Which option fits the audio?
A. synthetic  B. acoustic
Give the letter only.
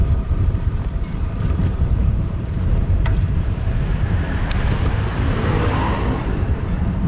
A